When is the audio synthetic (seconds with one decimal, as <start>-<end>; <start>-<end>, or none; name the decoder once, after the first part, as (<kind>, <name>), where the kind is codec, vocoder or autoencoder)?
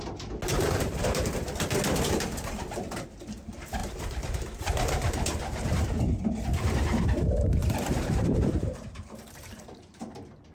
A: 0.5-1.3 (vocoder, BigVGAN v2); 3.8-5.7; 7.6-10.1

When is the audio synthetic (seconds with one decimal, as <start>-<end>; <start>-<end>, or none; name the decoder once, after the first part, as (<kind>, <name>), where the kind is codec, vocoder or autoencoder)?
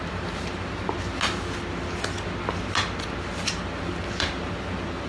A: 0.0-1.1 (vocoder, BigVGAN v2); 4.2-5.1